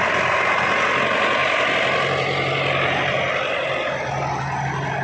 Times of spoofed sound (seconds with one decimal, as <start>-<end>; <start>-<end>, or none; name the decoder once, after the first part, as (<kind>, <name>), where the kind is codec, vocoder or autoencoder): none